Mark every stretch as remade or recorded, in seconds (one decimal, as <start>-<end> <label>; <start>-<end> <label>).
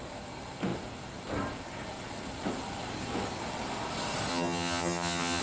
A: 0.0-4.3 recorded; 4.3-5.4 remade